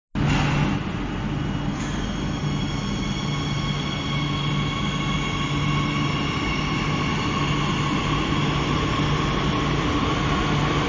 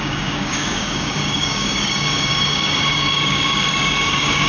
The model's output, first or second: second